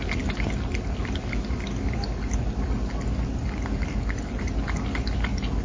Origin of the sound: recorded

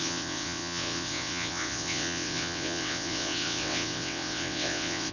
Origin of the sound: remade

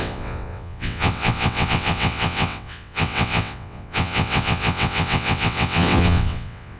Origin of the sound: remade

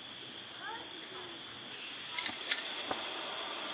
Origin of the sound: recorded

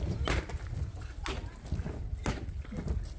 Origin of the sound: recorded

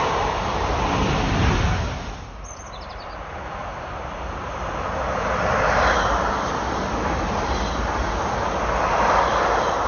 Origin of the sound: recorded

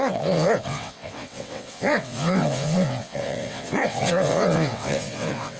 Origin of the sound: remade